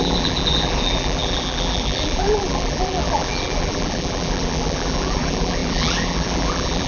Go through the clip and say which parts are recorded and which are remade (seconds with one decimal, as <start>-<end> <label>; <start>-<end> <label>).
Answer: 0.0-6.9 remade